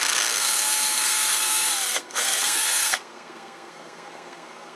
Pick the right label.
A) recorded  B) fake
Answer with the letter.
B